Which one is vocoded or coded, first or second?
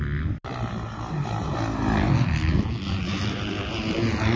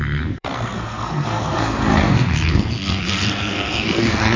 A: second